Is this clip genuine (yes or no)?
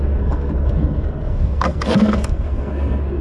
no